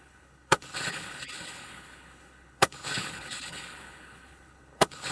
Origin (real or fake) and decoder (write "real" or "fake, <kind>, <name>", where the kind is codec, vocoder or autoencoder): fake, codec, HILCodec